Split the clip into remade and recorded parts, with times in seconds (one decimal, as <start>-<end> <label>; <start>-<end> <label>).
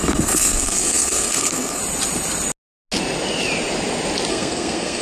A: 0.0-1.8 remade; 1.8-4.3 recorded; 4.3-5.0 remade